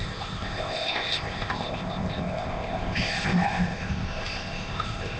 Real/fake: fake